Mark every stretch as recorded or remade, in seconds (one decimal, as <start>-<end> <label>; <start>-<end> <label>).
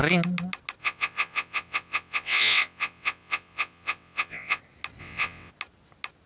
0.0-0.8 recorded; 0.8-4.6 remade; 4.6-5.0 recorded; 5.0-5.5 remade; 5.5-6.3 recorded